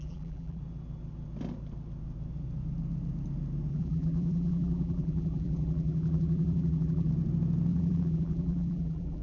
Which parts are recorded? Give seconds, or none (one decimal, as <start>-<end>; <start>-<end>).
0.6-3.7; 7.1-7.7